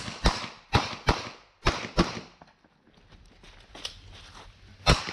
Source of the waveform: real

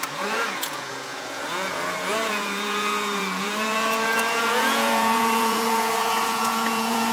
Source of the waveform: fake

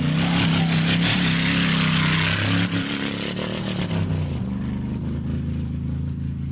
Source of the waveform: real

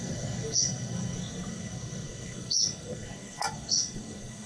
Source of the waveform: fake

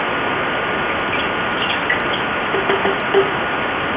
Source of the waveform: real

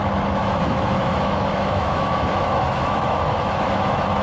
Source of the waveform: fake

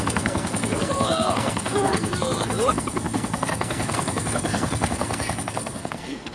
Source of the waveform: fake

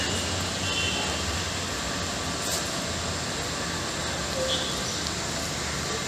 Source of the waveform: real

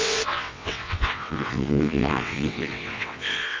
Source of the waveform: fake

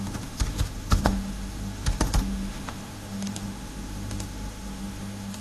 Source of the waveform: fake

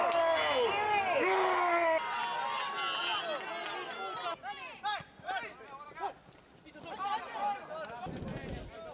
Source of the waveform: real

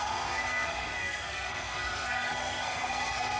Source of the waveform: fake